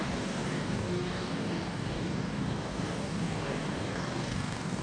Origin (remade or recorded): remade